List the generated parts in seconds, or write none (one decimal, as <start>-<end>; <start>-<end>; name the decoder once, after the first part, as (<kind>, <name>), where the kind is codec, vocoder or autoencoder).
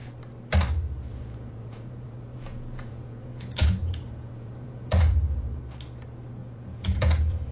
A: 1.1-5.6 (vocoder, Vocos); 6.4-7.5